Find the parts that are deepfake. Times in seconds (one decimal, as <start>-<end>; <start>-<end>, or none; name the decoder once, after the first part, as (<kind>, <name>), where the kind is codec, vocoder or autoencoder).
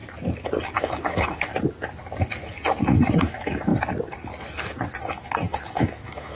0.8-1.5 (autoencoder, DAC-VAE); 3.2-3.7; 5.1-6.4